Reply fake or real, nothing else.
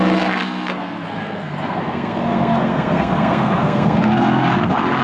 fake